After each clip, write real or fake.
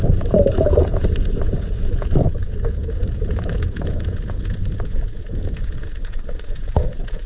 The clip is fake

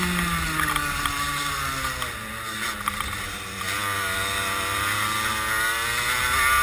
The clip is real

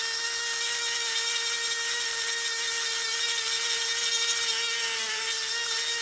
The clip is real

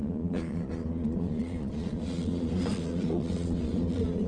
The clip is fake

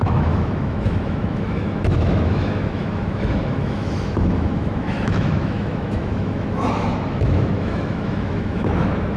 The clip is fake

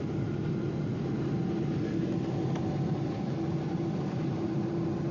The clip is real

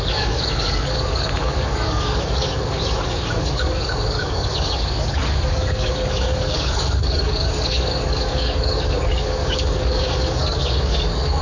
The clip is fake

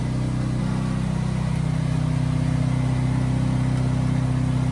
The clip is real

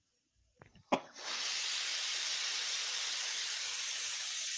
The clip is real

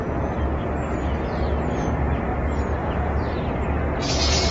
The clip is real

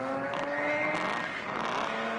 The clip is real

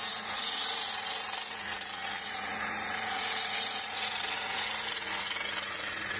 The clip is fake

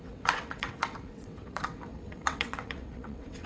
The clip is fake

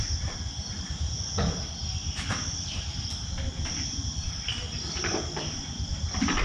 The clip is real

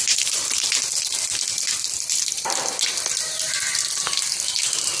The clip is real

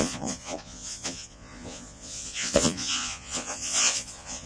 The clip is fake